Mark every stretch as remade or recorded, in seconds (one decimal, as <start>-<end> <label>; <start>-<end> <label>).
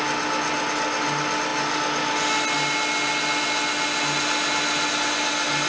0.0-5.7 recorded